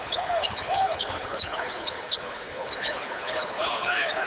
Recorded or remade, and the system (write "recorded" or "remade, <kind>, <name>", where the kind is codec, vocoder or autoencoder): remade, codec, HILCodec